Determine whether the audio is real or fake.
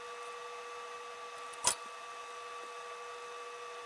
real